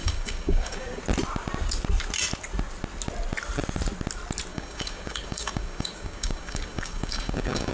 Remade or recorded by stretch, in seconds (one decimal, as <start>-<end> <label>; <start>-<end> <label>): 0.0-1.0 remade; 1.0-4.5 recorded; 4.5-7.7 remade